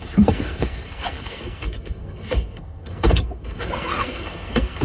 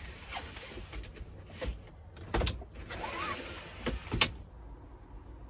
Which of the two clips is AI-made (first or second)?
first